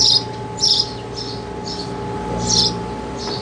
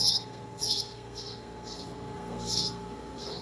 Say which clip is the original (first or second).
first